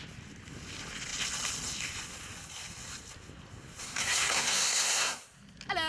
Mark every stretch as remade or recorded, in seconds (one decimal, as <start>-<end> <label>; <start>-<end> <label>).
0.0-3.8 recorded; 3.8-5.2 remade; 5.2-5.9 recorded

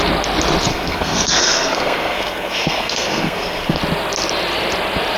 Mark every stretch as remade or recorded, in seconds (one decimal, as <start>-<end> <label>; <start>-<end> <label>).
0.0-0.7 recorded; 0.7-3.8 remade; 3.8-5.2 recorded